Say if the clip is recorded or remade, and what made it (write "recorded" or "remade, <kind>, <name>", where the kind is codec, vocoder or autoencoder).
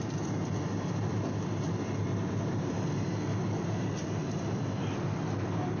recorded